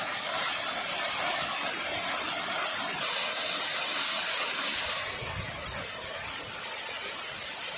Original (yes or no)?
yes